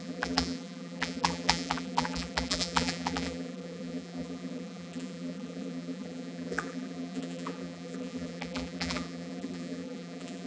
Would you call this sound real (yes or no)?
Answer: no